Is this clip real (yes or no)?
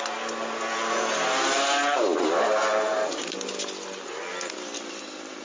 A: yes